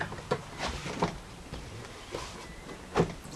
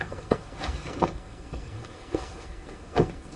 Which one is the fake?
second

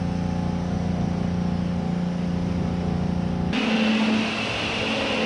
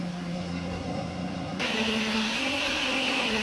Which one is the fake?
second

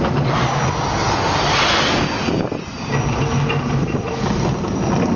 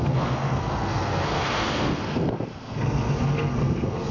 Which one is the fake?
second